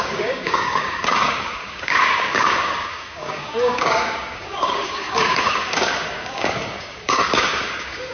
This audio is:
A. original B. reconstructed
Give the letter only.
B